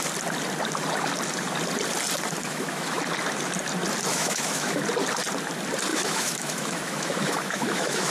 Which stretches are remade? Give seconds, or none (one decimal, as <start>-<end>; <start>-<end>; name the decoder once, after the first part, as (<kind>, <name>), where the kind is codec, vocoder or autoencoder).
2.4-3.0 (autoencoder, DAC-VAE); 4.1-4.8; 5.9-8.1